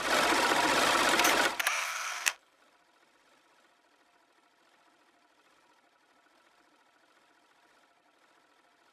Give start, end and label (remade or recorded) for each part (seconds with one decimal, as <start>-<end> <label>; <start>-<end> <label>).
0.0-1.8 recorded; 1.8-2.6 remade; 2.6-8.9 recorded